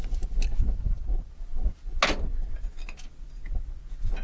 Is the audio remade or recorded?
recorded